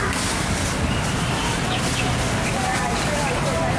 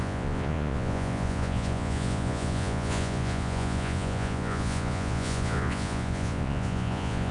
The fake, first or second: second